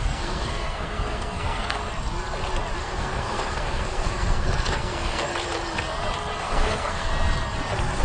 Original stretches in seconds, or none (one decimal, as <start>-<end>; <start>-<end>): 1.8-2.8; 5.3-6.4; 7.1-8.0